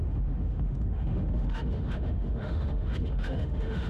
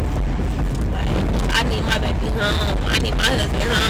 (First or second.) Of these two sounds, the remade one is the first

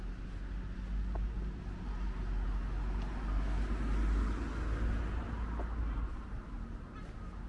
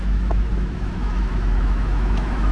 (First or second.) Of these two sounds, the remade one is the second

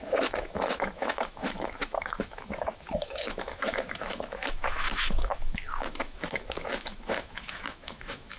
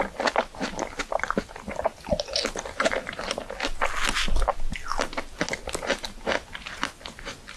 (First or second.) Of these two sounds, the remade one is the first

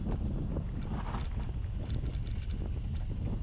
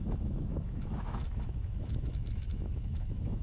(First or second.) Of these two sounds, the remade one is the second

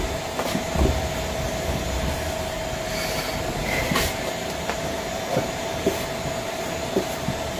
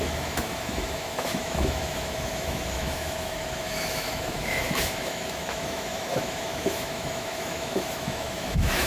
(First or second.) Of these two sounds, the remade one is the second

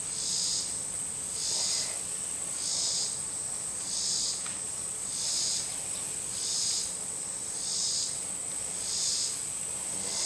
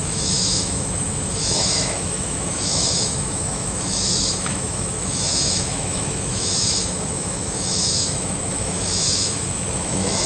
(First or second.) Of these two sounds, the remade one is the second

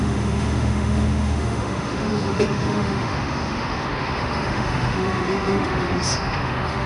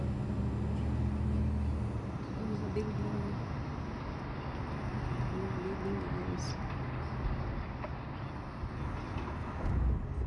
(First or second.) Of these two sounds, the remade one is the first